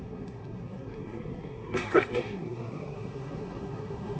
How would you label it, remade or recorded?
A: remade